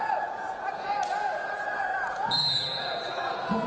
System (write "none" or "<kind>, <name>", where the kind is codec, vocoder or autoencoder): vocoder, Vocos